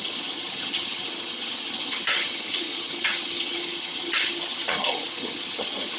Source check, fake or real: fake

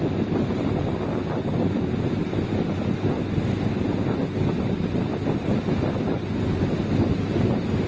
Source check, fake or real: real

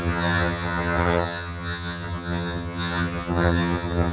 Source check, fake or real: fake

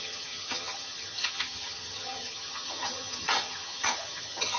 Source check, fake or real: fake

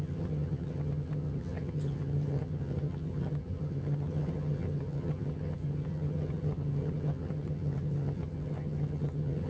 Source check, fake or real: fake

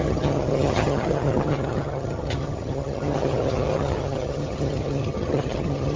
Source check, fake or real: fake